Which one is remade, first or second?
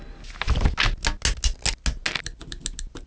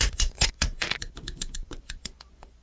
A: second